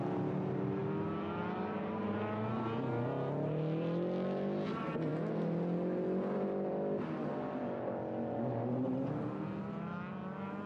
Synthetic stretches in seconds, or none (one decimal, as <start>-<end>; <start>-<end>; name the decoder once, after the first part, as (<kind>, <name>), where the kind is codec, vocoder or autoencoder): none